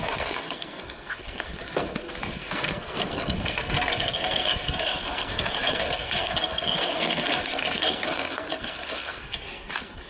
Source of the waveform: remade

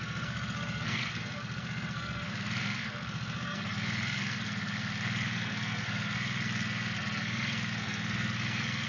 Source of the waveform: remade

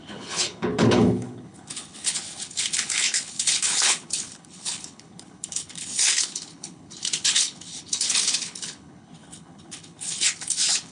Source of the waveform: remade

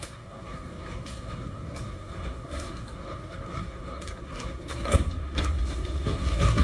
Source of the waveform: remade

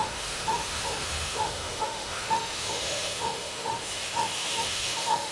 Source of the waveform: remade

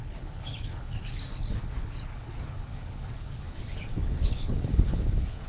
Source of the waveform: remade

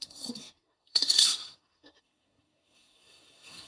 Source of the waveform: remade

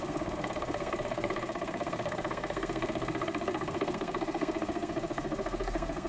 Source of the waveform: remade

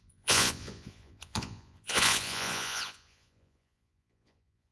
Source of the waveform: remade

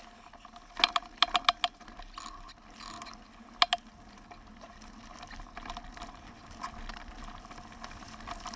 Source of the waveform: recorded